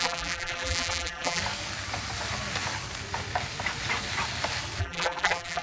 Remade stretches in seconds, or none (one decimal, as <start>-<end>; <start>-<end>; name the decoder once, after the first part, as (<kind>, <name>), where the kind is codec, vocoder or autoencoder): 0.0-1.4 (vocoder, BigVGAN v2); 4.8-5.6